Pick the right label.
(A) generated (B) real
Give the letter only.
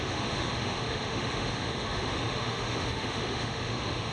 A